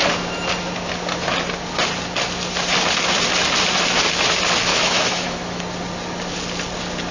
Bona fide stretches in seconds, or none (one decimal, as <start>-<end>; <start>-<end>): 0.0-4.7; 5.6-7.1